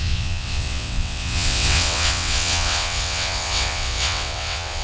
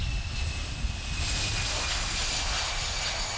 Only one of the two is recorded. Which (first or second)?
second